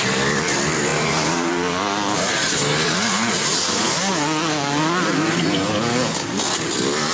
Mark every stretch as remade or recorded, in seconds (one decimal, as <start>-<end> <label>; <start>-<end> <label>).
0.0-7.1 recorded